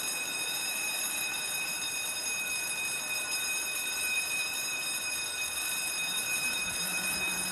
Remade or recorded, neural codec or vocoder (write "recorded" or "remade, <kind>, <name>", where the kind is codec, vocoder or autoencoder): remade, vocoder, BigVGAN v2